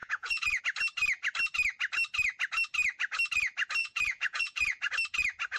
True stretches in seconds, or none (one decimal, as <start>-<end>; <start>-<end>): 0.6-3.8; 4.9-5.6

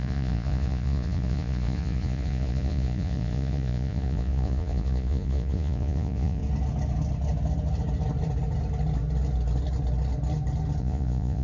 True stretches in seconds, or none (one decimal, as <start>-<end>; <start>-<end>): 6.4-10.8